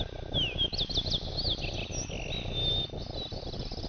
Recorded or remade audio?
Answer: recorded